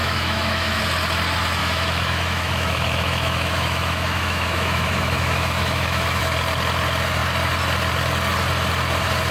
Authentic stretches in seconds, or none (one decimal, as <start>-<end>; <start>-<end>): 0.8-1.6; 6.2-9.3